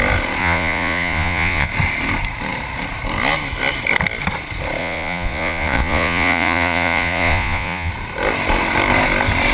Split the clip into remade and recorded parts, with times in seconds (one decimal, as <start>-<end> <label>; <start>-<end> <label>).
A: 0.0-0.4 recorded; 0.4-1.7 remade; 1.7-4.8 recorded; 4.8-7.9 remade; 7.9-9.5 recorded